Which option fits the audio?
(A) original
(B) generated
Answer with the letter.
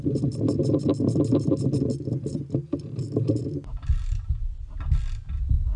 A